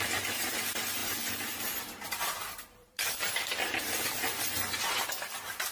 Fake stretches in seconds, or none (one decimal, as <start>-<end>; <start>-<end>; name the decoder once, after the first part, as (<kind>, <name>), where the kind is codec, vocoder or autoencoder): 1.0-4.4 (vocoder, BigVGAN v2)